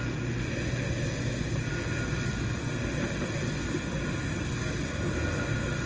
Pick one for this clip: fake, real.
real